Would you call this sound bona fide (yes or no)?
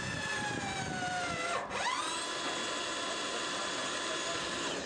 yes